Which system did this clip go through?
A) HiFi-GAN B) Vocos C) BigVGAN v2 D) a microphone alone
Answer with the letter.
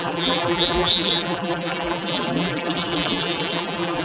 C